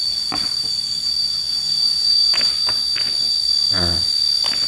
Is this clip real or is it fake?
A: real